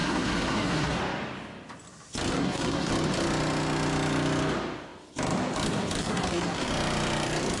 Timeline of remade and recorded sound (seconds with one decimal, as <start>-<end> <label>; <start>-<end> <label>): 0.0-1.0 remade; 1.0-2.3 recorded; 2.3-2.9 remade; 2.9-6.0 recorded; 6.0-6.7 remade; 6.7-7.6 recorded